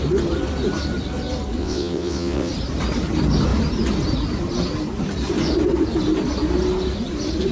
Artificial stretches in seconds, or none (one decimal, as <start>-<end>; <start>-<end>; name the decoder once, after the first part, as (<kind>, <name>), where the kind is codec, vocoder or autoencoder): 1.6-2.5 (vocoder, WaveNeXt)